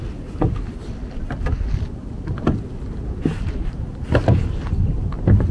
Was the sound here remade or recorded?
recorded